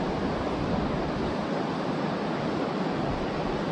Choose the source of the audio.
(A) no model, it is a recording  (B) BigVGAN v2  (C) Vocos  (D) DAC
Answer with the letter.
A